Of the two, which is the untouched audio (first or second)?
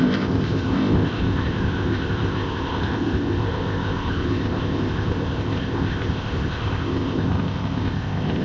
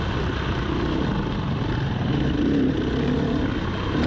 second